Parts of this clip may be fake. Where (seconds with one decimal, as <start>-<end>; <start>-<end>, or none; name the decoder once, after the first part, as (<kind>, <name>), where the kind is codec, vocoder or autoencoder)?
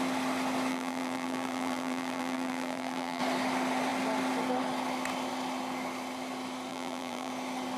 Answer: 0.7-3.2 (vocoder, BigVGAN v2); 6.7-7.3